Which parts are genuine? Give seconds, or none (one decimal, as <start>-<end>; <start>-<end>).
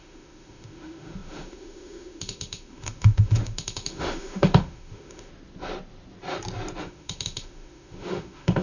5.3-6.8